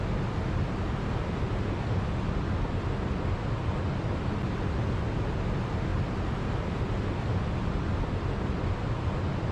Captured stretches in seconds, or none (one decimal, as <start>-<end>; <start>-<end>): 0.0-9.5